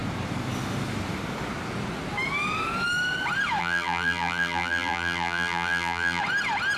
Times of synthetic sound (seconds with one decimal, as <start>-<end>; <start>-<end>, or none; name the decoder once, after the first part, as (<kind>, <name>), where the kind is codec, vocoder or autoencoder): 3.6-6.2 (vocoder, BigVGAN v2)